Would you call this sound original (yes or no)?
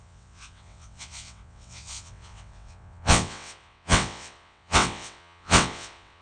no